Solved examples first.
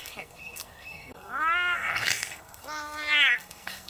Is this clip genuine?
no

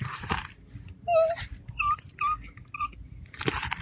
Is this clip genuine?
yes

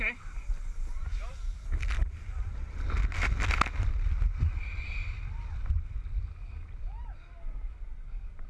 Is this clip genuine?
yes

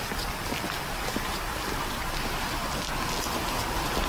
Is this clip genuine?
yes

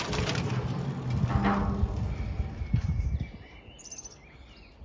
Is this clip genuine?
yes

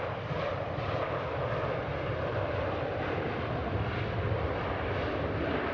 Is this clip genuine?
yes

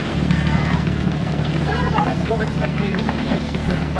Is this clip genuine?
no